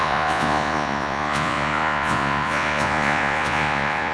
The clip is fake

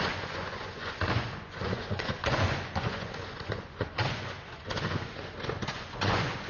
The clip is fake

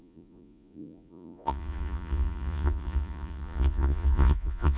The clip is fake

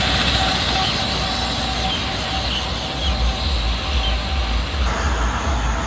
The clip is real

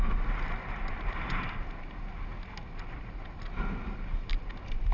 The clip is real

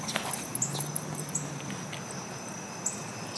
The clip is real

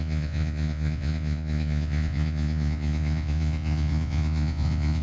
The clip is fake